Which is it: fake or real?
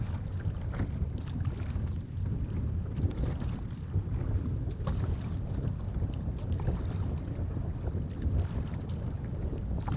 real